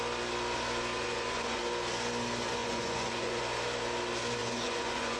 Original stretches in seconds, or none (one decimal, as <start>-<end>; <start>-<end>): 0.0-0.9; 1.6-2.6; 3.4-4.4